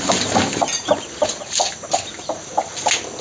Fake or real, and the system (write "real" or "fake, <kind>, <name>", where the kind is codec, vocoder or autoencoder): real